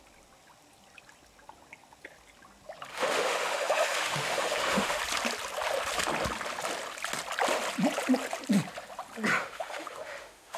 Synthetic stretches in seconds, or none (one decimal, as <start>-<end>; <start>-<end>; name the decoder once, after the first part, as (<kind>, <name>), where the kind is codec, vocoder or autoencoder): 2.9-5.0 (autoencoder, DAC-VAE); 9.4-10.6